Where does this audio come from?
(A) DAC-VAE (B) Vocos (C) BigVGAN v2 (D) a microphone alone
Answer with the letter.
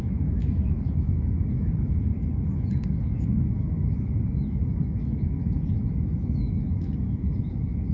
A